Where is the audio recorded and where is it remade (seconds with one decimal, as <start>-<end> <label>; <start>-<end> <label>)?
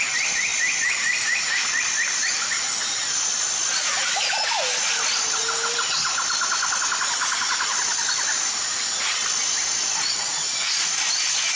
0.0-11.6 recorded